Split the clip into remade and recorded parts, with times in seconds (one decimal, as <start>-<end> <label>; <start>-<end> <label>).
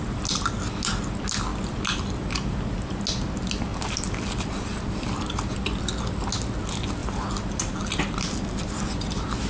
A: 0.0-7.0 recorded; 7.0-7.7 remade; 7.7-9.5 recorded